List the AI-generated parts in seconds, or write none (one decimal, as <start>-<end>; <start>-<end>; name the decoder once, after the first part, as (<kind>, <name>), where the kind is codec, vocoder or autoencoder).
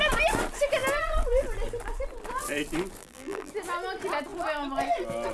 3.0-3.5 (vocoder, BigVGAN v2)